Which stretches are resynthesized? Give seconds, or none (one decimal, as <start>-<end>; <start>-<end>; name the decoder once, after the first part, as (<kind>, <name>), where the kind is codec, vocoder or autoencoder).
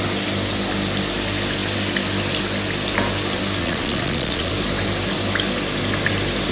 3.6-4.5 (vocoder, Vocos)